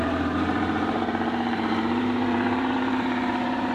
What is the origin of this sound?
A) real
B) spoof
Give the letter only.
B